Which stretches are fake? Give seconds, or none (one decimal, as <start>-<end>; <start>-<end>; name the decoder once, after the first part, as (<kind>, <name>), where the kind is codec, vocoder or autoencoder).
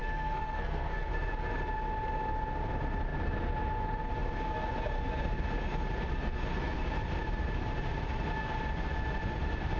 0.0-1.1 (codec, SNAC)